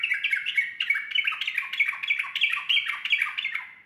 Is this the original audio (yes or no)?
yes